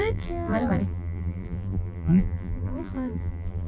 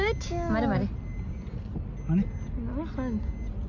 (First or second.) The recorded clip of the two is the second